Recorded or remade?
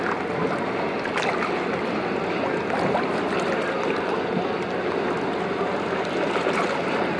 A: recorded